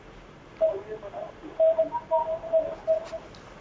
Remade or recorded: recorded